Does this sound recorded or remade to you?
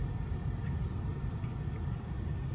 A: recorded